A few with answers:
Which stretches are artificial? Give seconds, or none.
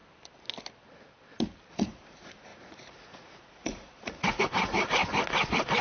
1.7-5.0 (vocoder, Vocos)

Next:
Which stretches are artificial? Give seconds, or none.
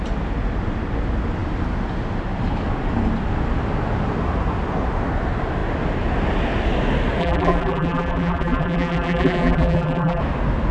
7.2-10.2 (vocoder, BigVGAN v2)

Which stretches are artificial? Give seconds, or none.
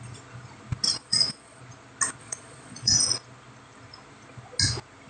0.9-1.6 (vocoder, Vocos); 2.2-3.0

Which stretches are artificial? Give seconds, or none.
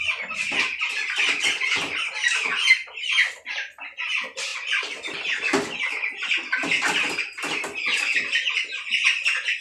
none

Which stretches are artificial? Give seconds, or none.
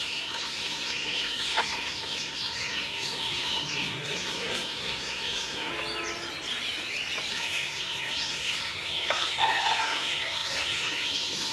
0.0-5.7 (codec, SNAC); 7.3-11.5